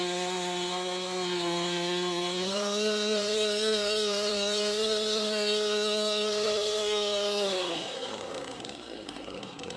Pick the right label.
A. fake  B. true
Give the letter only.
A